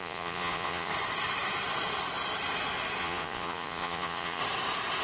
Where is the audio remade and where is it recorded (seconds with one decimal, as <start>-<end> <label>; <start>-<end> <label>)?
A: 0.0-0.9 remade; 0.9-3.0 recorded; 3.0-4.4 remade; 4.4-5.0 recorded